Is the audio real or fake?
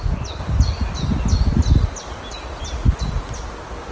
real